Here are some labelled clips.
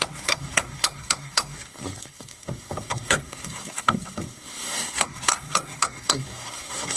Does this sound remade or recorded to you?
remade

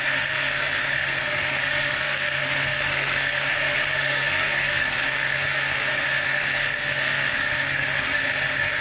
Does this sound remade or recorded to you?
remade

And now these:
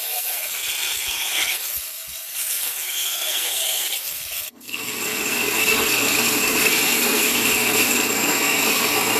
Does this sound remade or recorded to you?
remade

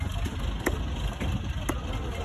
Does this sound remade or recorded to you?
recorded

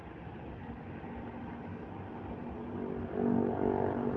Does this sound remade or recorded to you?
recorded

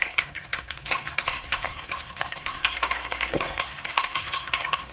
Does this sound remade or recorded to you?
remade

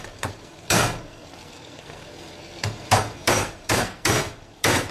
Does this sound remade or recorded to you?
remade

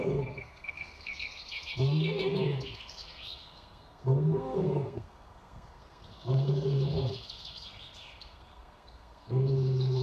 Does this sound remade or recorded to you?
remade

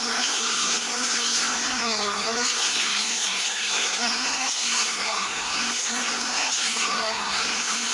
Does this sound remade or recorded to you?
remade